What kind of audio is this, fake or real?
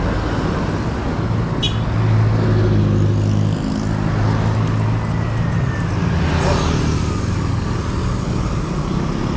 real